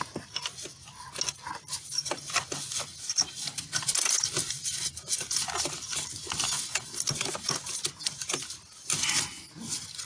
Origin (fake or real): real